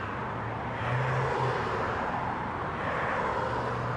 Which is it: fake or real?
real